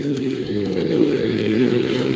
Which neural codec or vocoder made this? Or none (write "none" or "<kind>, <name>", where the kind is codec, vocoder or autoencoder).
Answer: codec, SNAC